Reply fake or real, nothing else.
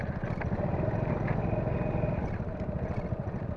real